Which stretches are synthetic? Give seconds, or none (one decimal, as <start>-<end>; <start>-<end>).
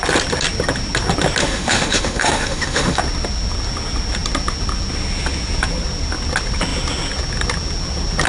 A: 1.4-3.0